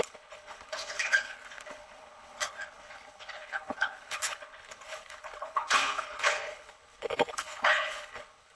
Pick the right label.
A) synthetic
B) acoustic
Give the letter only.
A